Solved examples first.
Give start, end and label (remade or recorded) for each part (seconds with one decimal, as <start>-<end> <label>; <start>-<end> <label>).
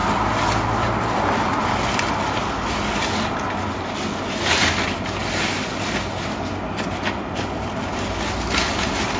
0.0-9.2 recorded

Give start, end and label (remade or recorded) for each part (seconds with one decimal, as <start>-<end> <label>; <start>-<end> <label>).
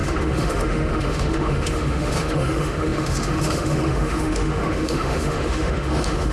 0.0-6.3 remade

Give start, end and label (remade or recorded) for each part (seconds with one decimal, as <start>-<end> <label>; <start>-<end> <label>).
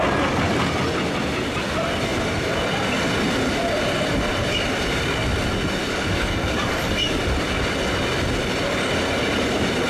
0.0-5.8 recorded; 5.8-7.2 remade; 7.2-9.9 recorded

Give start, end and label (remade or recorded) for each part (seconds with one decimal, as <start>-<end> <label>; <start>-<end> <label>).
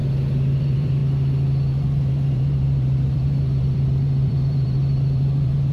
0.0-0.6 recorded; 0.6-1.0 remade; 1.0-1.7 recorded; 1.7-5.7 remade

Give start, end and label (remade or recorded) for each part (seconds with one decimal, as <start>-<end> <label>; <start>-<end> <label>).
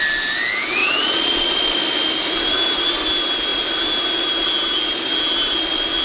0.0-0.8 recorded; 0.8-1.5 remade; 1.5-6.0 recorded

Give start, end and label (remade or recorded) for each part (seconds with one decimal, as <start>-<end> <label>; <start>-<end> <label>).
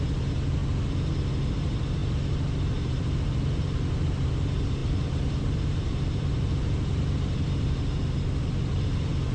0.0-0.6 remade; 0.6-1.5 recorded; 1.5-9.3 remade